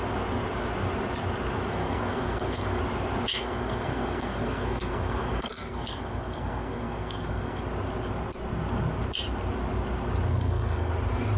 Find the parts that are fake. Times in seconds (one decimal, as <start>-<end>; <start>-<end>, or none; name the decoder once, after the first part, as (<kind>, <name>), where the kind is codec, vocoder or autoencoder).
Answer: 1.8-2.8 (codec, SNAC); 3.3-7.6; 10.3-10.9

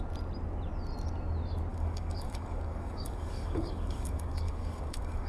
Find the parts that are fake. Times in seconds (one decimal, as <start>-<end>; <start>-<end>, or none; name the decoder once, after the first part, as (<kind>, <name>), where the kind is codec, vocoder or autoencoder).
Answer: 1.7-5.3 (codec, DAC)

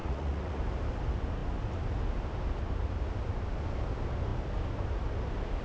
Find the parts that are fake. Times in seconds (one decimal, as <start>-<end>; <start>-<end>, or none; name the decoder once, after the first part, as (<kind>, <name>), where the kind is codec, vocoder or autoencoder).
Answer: 0.0-0.6 (vocoder, Vocos)

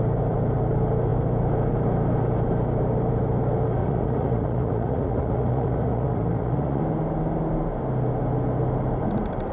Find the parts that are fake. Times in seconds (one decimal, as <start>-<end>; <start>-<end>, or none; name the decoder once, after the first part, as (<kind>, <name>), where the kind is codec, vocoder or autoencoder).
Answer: 3.8-6.8 (vocoder, Vocos)

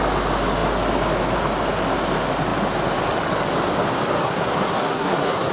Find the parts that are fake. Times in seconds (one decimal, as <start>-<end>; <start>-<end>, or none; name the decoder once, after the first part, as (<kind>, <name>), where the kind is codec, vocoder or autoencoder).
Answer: 4.2-5.5 (codec, SNAC)

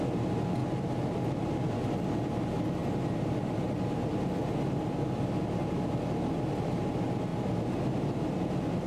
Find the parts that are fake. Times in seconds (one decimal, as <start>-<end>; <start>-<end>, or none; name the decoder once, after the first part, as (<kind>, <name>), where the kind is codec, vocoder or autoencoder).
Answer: none